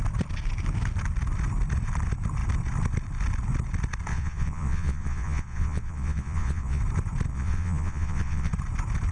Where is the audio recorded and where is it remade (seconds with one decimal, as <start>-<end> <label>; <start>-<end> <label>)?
0.0-4.1 recorded; 4.1-6.8 remade; 6.8-7.3 recorded; 7.3-8.5 remade; 8.5-9.1 recorded